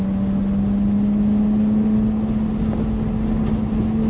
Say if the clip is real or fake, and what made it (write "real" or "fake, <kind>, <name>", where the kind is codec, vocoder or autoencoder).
real